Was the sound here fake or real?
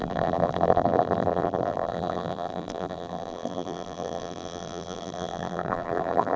fake